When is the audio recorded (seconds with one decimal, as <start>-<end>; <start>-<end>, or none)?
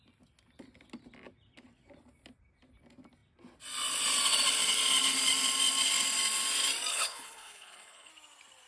0.0-6.9; 8.1-8.7